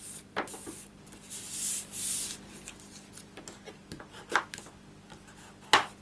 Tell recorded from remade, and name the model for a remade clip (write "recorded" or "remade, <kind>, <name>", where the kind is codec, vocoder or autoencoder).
recorded